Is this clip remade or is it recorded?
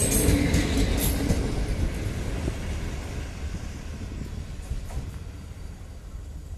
recorded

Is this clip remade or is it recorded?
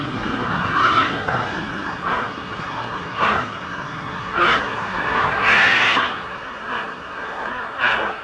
remade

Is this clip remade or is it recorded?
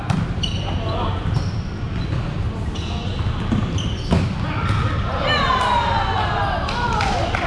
recorded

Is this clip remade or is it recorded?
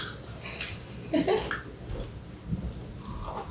recorded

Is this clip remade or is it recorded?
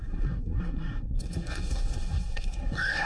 remade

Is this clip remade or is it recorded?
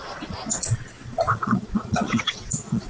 remade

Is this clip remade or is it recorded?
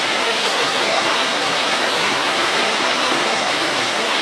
remade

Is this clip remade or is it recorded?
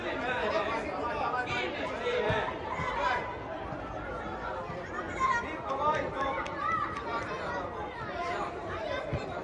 remade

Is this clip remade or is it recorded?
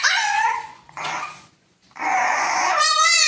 remade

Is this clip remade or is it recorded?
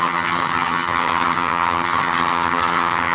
remade